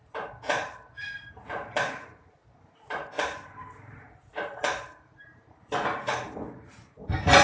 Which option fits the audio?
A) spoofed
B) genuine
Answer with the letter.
A